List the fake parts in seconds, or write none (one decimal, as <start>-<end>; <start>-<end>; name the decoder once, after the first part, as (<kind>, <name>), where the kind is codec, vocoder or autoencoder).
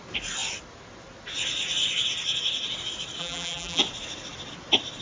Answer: 3.2-3.8 (vocoder, BigVGAN v2)